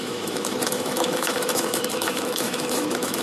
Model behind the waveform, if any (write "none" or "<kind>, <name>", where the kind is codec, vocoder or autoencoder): autoencoder, DAC-VAE